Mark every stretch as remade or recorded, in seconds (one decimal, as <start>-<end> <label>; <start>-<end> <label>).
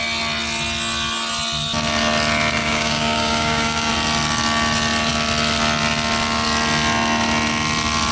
0.0-2.6 recorded; 2.6-3.9 remade; 3.9-8.1 recorded